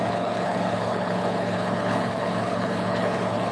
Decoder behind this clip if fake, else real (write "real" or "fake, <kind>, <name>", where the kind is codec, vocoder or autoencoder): fake, codec, HILCodec